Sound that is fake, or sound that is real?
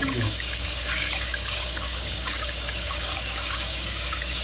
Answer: fake